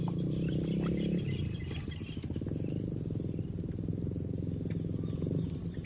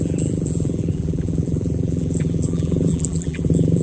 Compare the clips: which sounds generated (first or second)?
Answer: second